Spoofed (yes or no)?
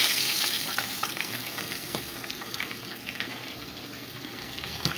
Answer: yes